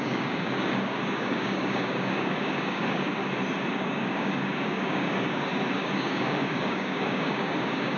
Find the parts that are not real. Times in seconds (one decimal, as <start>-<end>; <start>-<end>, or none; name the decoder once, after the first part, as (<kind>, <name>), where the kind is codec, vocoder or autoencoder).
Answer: 0.0-3.2 (codec, DAC); 3.7-8.0